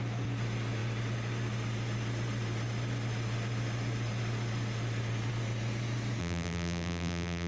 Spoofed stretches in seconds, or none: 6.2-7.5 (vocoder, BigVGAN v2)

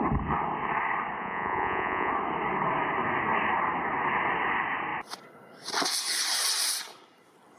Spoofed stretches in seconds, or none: 1.2-2.1 (vocoder, Vocos)

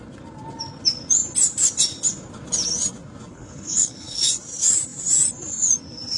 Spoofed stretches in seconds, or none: 3.3-4.2 (codec, HILCodec)

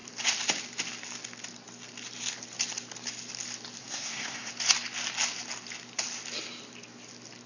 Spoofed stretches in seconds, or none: 3.8-4.5 (codec, SNAC)